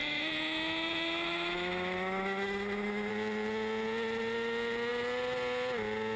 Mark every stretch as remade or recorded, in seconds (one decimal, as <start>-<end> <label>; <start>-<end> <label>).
0.0-3.1 remade; 3.1-6.2 recorded